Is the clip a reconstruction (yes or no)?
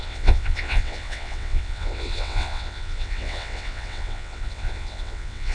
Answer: yes